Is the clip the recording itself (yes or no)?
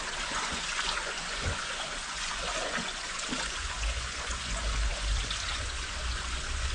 no